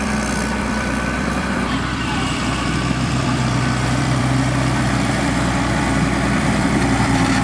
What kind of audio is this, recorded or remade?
remade